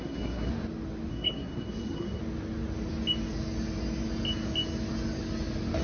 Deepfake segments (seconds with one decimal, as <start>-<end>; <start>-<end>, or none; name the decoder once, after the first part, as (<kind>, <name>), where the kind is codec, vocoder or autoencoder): 0.0-0.5 (codec, SNAC); 1.1-2.2